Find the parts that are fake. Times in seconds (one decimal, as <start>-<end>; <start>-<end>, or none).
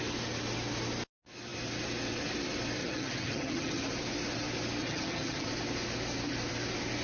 2.8-3.8; 4.8-5.5